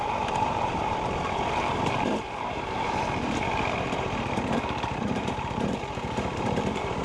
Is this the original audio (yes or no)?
no